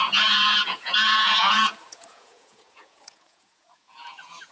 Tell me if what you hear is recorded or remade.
remade